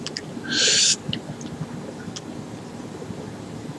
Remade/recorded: recorded